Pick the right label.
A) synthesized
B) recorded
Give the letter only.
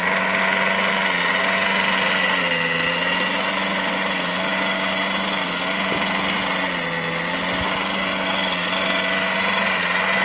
B